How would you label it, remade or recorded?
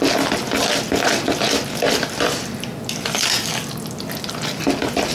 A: recorded